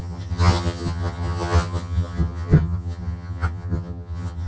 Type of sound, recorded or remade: remade